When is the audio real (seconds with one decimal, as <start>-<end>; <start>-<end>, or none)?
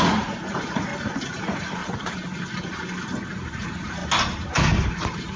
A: 0.9-1.4; 1.8-3.3; 4.0-4.9